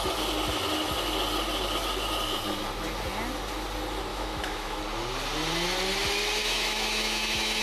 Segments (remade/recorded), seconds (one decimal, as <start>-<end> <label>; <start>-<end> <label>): 0.0-4.1 recorded; 4.1-4.8 remade; 4.8-6.4 recorded; 6.4-7.6 remade